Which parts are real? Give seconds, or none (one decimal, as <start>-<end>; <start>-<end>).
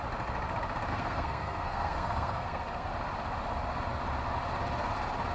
0.0-0.9; 2.9-5.3